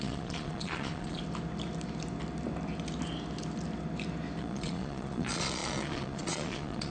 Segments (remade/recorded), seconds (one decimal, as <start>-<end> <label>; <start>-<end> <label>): 0.0-1.2 remade; 1.2-4.4 recorded; 4.4-6.9 remade